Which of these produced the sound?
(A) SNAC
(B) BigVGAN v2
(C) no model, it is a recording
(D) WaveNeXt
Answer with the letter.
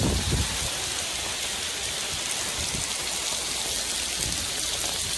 C